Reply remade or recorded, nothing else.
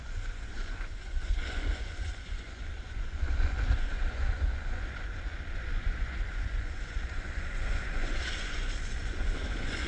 remade